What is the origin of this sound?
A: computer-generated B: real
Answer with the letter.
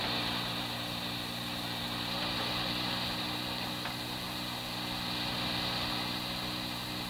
B